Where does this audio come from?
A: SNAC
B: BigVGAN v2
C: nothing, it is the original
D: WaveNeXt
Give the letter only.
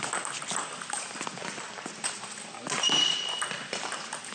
C